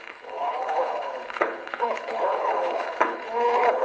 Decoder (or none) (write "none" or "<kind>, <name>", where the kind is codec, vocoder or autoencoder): codec, HILCodec